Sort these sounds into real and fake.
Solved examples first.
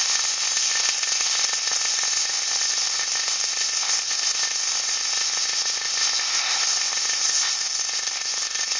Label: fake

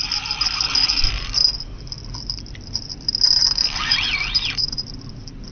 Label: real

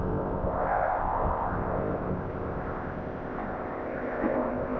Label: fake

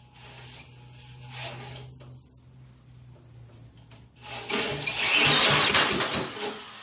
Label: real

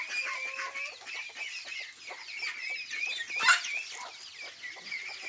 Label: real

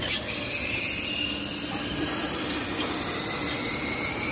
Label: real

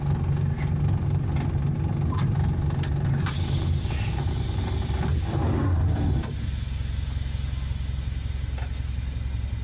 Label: real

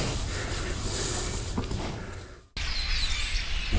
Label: real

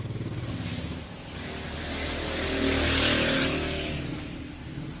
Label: real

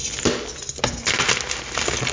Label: real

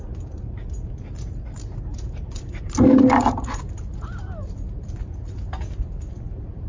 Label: real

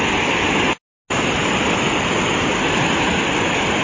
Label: real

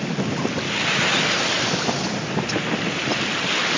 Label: real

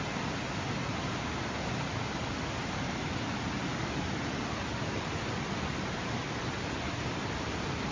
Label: real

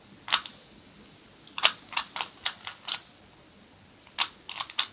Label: real